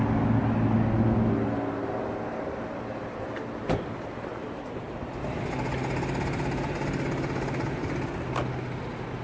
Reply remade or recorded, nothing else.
recorded